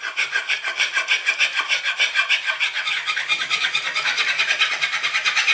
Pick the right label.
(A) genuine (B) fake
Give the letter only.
A